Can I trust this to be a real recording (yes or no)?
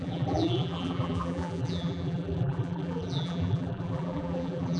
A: no